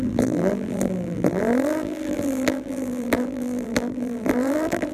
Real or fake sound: fake